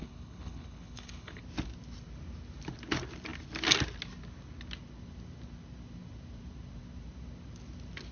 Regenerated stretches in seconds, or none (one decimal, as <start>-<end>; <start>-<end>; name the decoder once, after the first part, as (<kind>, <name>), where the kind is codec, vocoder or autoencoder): 0.0-1.4 (codec, HILCodec)